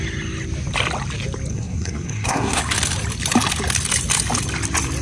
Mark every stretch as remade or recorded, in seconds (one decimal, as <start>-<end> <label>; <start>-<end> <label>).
0.0-1.5 recorded; 1.5-2.6 remade; 2.6-5.0 recorded

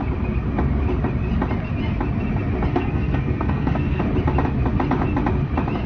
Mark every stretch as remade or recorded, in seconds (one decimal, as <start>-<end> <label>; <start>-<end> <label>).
0.0-2.7 recorded; 2.7-4.0 remade; 4.0-5.9 recorded

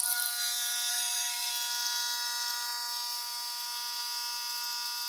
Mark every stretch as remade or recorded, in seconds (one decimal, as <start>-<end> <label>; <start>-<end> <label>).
0.0-0.9 recorded; 0.9-1.5 remade; 1.5-5.1 recorded

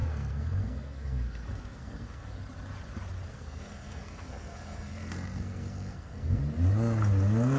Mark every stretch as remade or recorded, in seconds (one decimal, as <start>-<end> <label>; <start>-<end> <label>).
0.0-2.4 remade; 2.4-3.3 recorded; 3.3-6.4 remade; 6.4-7.6 recorded

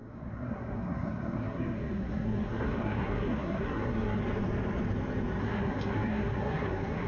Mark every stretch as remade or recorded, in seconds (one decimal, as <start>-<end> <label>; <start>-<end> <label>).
0.0-4.2 remade; 4.2-5.4 recorded; 5.4-7.1 remade